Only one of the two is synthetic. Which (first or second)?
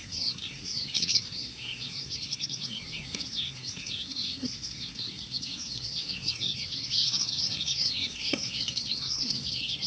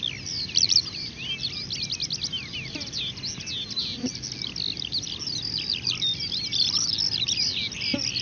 first